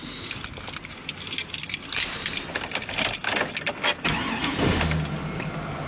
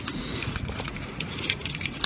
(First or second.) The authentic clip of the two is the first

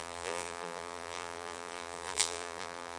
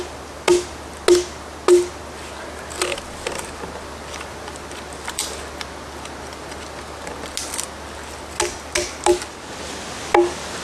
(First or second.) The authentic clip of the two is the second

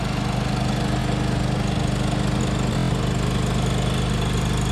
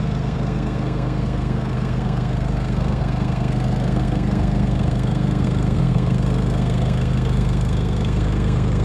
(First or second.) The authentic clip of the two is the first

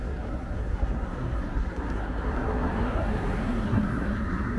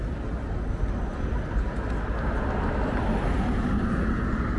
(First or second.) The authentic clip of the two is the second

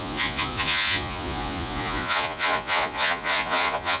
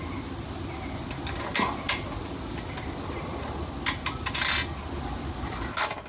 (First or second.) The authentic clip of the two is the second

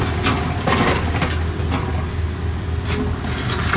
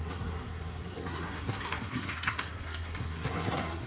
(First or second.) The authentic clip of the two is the first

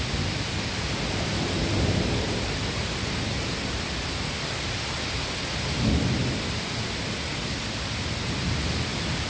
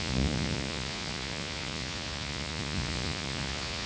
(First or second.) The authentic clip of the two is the first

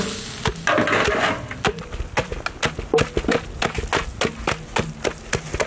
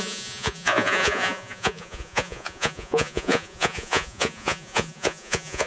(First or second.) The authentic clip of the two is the first